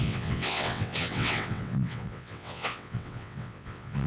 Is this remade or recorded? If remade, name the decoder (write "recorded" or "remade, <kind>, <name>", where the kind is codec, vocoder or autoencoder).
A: remade, vocoder, WaveNeXt